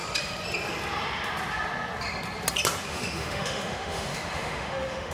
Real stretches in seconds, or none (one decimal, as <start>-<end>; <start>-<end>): 0.0-2.9